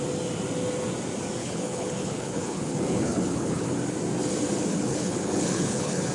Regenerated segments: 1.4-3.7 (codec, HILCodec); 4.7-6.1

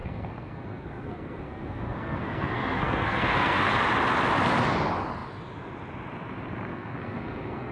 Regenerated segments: 0.0-3.7 (codec, SNAC); 6.7-7.7

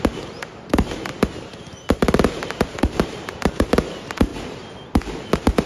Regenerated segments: 0.0-4.3 (vocoder, BigVGAN v2)